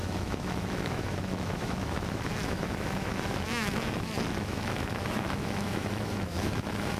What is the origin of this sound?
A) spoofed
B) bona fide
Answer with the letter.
A